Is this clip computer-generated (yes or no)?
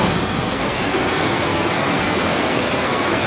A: yes